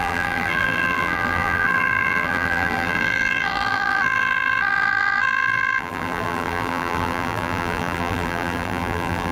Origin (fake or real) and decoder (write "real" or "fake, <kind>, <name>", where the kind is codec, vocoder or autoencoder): fake, vocoder, BigVGAN v2